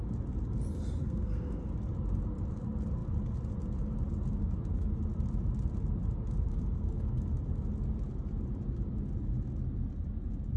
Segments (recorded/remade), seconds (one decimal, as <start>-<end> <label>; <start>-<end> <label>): 0.0-1.0 recorded; 1.0-1.6 remade; 1.6-6.5 recorded; 6.5-7.3 remade; 7.3-10.6 recorded